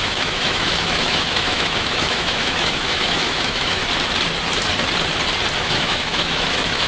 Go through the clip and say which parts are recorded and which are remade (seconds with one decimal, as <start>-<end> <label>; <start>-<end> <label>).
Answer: 0.0-3.8 remade; 3.8-5.6 recorded; 5.6-6.9 remade